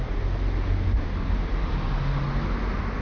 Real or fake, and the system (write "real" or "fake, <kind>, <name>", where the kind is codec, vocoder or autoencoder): real